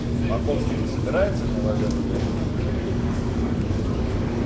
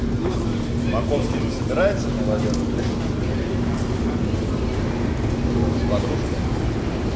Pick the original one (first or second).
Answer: second